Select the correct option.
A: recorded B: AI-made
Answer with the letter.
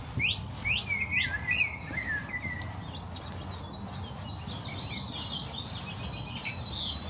A